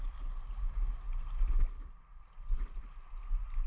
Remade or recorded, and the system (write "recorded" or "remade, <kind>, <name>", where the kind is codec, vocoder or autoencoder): recorded